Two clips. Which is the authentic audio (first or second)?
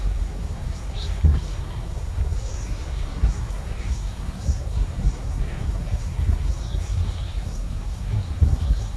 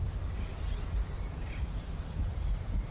second